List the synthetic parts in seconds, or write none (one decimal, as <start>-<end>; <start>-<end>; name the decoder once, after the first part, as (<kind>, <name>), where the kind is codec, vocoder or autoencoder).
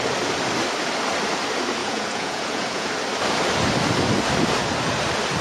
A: 1.8-2.9 (vocoder, Vocos)